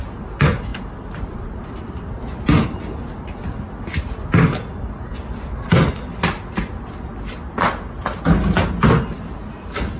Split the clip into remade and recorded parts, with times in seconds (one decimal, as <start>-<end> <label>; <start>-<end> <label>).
0.0-0.7 recorded; 0.7-2.1 remade; 2.1-10.0 recorded